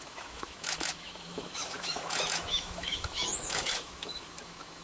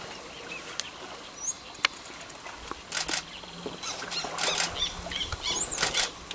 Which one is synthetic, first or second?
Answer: first